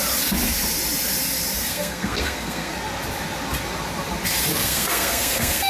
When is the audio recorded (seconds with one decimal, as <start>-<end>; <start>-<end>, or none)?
0.0-1.6; 2.7-4.5